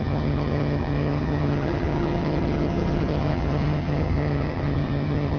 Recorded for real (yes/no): no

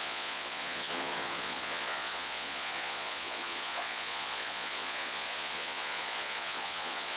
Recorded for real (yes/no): no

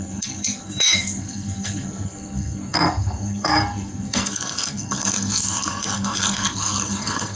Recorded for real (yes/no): no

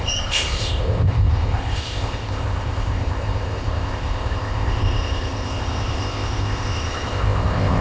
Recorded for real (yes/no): no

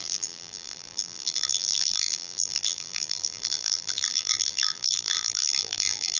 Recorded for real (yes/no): no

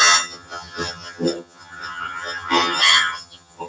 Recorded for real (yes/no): no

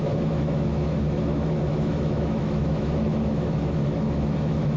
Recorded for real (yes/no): no